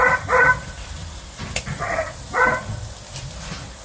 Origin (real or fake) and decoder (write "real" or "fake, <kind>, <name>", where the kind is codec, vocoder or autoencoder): fake, vocoder, BigVGAN v2